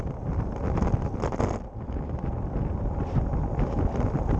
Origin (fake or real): real